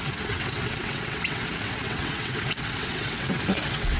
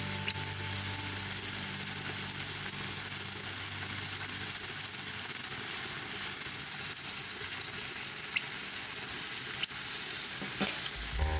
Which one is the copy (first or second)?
first